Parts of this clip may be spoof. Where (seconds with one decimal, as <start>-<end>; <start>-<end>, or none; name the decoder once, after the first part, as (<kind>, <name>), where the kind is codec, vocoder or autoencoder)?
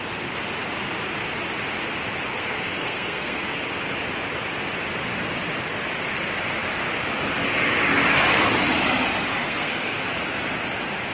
2.3-3.4 (codec, SNAC); 9.4-10.0